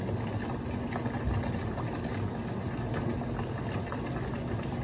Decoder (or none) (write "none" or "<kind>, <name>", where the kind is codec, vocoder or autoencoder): none